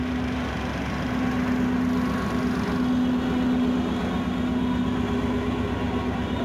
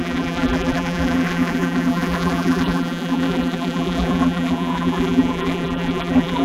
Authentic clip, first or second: first